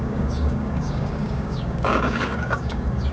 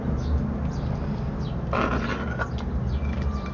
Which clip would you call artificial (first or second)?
first